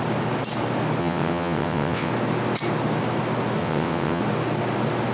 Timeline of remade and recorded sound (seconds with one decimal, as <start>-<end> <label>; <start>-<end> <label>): 0.0-1.0 recorded; 1.0-2.1 remade; 2.1-3.6 recorded; 3.6-4.2 remade; 4.2-5.1 recorded